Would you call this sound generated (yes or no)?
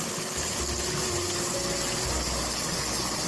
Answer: no